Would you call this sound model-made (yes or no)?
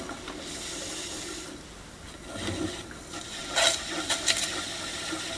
no